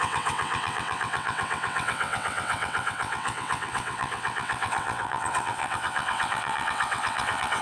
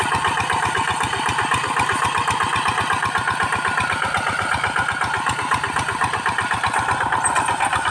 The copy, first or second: first